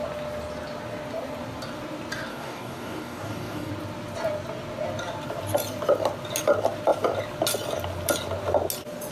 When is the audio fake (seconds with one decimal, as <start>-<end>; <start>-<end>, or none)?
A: 2.3-3.7